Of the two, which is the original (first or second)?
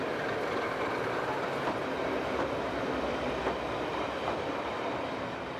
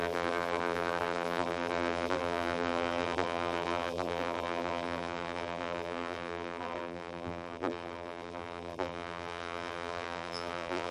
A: first